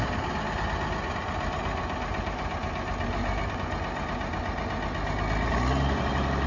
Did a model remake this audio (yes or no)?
no